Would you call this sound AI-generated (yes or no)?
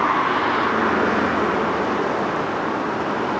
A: no